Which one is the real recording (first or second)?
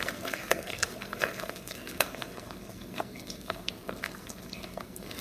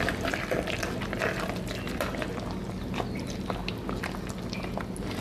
second